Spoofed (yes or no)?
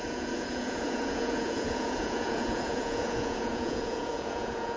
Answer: yes